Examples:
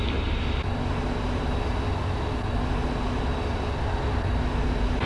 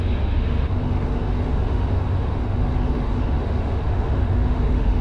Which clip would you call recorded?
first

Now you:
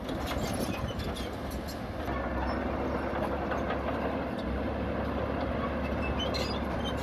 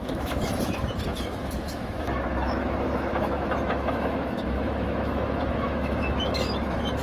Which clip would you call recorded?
first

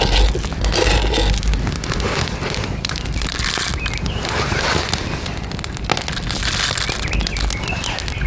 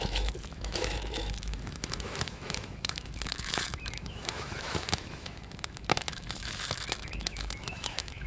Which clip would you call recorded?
first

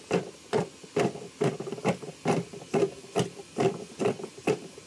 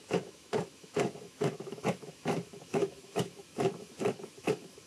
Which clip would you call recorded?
first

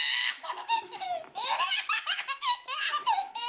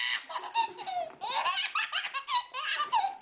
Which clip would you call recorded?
second